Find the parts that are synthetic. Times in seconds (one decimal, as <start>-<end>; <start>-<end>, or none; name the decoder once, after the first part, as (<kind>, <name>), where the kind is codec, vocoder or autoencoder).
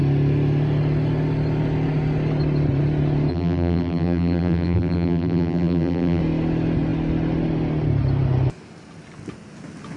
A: 3.3-6.2 (vocoder, BigVGAN v2)